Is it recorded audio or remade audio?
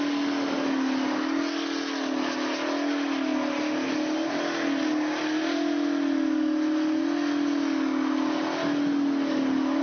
recorded